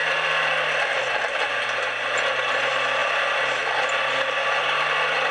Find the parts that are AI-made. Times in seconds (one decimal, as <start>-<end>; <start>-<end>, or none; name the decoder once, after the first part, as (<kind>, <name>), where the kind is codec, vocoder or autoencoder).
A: none